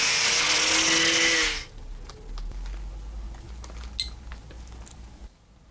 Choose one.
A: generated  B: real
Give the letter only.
B